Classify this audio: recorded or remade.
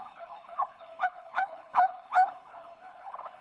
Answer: remade